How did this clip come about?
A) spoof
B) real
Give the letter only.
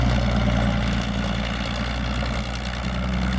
B